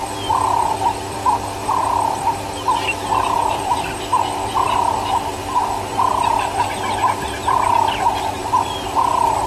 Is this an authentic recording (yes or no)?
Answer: no